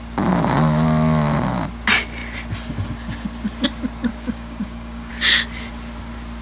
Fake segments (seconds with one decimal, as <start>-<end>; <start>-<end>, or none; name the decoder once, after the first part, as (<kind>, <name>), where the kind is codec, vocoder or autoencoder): 4.1-5.1 (codec, DAC)